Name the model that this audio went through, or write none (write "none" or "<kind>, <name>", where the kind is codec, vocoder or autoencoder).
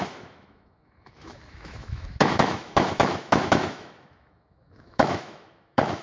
autoencoder, DAC-VAE